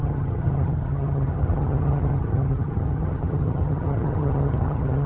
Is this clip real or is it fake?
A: fake